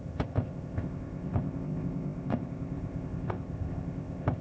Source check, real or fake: fake